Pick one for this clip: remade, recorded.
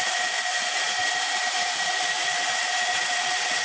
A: recorded